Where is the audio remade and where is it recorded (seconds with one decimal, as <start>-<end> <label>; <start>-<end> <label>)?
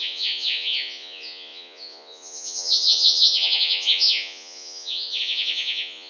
0.0-6.1 remade